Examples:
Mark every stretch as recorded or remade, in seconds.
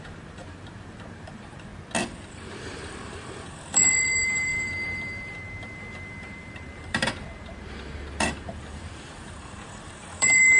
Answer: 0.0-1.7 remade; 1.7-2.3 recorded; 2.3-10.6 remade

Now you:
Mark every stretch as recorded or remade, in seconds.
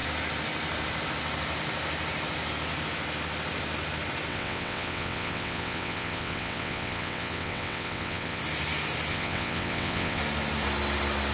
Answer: 0.0-4.3 recorded; 4.3-8.4 remade; 8.4-9.1 recorded; 9.1-10.2 remade; 10.2-11.3 recorded